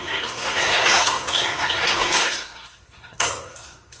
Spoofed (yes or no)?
yes